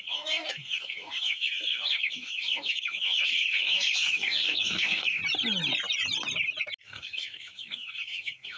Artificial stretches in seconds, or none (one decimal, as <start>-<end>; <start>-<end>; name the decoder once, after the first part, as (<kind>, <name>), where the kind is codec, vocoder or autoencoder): 0.0-5.2 (codec, DAC); 6.8-8.6